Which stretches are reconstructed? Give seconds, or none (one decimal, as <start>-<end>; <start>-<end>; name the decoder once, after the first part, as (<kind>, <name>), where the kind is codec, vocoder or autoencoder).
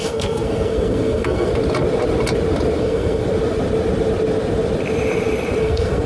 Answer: 0.0-1.5 (codec, SNAC); 2.8-3.2; 5.6-6.1